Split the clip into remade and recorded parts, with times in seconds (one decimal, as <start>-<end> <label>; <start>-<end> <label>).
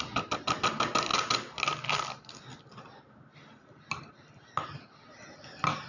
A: 0.0-5.9 recorded